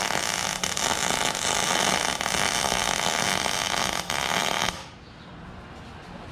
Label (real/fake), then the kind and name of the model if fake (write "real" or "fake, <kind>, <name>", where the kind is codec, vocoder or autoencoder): real